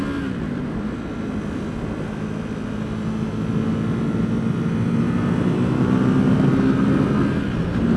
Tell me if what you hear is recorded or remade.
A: recorded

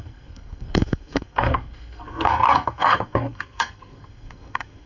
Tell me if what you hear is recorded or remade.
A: remade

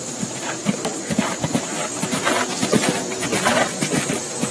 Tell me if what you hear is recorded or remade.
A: remade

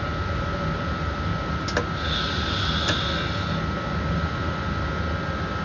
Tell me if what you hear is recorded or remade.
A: recorded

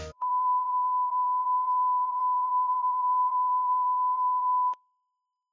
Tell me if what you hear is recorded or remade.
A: remade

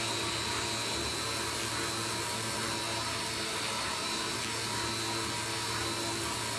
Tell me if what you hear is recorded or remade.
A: recorded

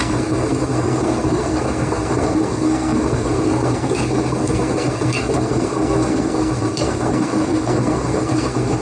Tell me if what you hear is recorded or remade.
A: remade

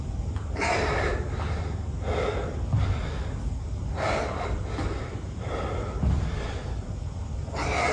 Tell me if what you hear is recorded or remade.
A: recorded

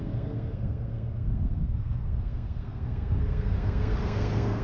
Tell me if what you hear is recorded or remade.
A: remade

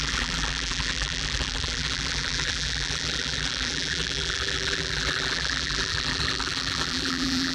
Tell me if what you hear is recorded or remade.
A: remade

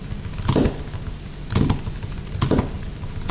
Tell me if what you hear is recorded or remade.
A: recorded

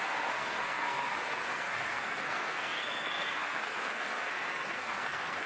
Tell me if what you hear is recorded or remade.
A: remade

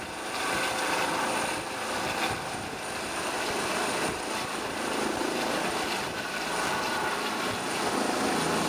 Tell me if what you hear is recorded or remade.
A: remade